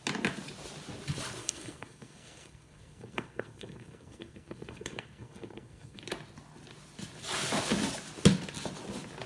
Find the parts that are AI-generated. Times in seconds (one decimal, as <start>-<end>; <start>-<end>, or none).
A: 1.4-6.0